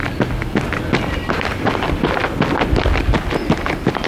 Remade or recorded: recorded